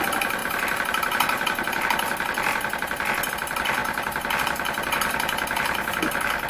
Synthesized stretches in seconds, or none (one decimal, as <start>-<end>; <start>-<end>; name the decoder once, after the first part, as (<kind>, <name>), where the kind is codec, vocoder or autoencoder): none